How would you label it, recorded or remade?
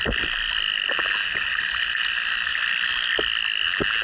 recorded